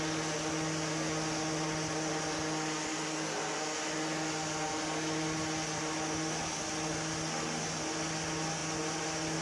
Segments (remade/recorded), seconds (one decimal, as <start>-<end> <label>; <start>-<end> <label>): 0.0-9.4 recorded